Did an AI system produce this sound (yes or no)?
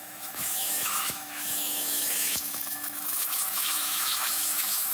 yes